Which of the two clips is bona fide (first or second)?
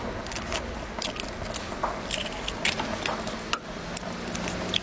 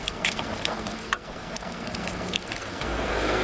first